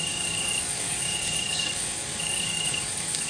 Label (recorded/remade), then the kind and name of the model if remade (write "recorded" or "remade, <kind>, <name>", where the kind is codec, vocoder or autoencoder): remade, codec, DAC